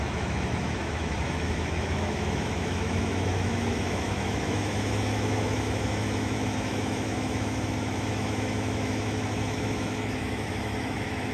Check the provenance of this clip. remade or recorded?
remade